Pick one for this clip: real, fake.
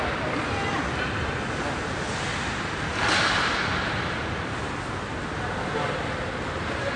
real